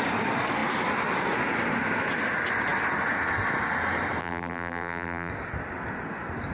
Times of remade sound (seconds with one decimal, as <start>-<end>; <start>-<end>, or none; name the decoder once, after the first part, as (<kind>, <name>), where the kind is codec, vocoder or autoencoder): 4.2-5.3 (vocoder, BigVGAN v2)